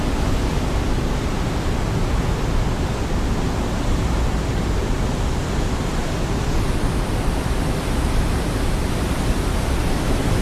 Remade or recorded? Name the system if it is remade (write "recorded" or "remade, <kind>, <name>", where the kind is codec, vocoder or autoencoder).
recorded